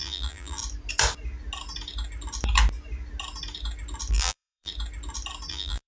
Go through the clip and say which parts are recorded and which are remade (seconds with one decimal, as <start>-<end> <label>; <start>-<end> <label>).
0.0-0.6 remade; 0.6-4.1 recorded; 4.1-4.7 remade; 4.7-5.5 recorded; 5.5-5.9 remade